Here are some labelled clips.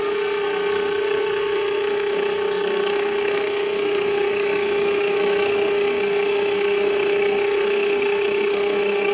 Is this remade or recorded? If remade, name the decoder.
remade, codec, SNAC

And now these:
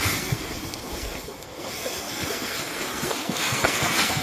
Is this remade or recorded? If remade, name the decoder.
remade, codec, SNAC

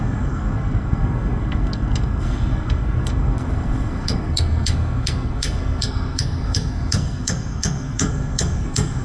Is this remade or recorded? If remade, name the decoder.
remade, codec, SNAC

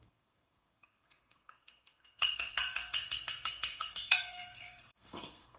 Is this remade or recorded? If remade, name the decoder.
remade, codec, SNAC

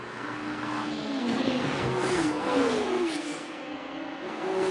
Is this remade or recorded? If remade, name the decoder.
remade, codec, SNAC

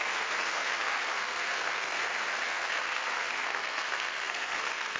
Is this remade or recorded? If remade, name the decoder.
remade, codec, SNAC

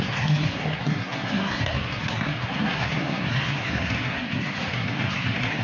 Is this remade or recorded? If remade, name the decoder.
remade, codec, SNAC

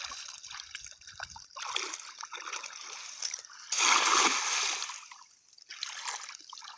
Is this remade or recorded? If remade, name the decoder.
recorded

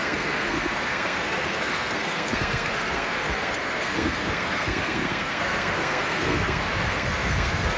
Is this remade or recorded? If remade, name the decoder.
remade, codec, SNAC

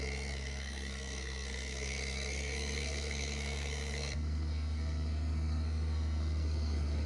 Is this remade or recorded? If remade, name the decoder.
remade, codec, SNAC